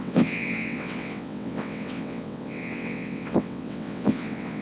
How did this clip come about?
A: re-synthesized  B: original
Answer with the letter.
A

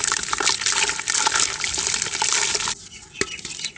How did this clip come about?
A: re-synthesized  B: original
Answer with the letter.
B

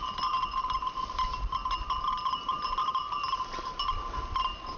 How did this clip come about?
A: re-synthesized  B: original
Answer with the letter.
B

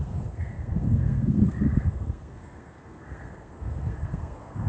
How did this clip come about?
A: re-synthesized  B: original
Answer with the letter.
A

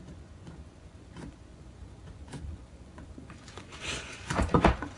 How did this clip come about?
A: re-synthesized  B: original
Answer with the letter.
A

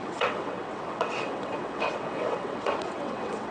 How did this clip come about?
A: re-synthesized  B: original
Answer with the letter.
A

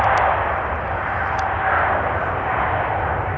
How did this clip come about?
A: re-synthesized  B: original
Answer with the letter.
B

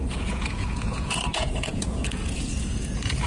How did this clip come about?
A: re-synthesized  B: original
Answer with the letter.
A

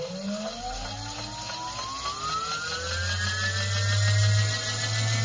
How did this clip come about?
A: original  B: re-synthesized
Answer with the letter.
A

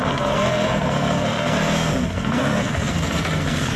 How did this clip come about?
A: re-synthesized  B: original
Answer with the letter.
A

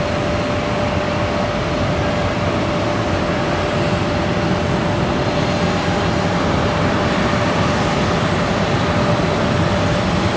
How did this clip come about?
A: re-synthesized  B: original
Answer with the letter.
B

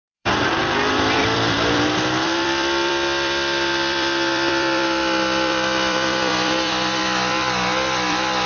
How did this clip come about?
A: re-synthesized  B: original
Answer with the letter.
A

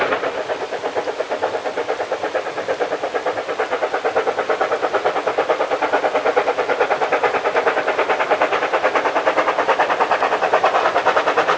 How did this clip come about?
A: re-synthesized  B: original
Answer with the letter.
B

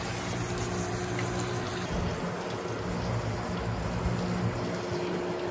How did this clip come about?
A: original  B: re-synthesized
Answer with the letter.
A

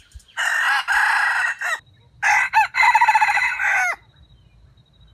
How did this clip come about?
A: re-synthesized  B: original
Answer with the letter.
B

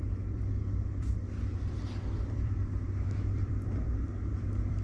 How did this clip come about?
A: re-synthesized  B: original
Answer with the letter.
A